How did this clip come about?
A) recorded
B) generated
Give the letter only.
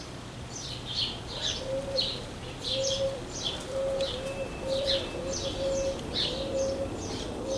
B